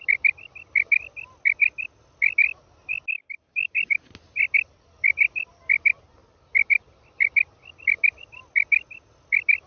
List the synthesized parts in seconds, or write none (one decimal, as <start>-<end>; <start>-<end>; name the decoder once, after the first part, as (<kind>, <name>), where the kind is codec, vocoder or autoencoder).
none

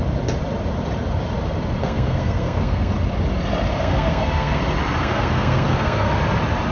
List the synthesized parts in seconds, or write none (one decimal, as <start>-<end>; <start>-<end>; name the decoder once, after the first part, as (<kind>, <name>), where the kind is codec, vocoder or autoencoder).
1.8-2.9 (codec, SNAC); 3.7-4.6; 5.0-6.1

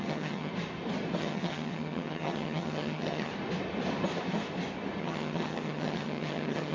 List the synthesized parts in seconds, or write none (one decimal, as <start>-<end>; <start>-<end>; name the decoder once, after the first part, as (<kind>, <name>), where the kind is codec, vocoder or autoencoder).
0.0-0.5 (vocoder, HiFi-GAN); 1.2-3.3; 5.0-6.7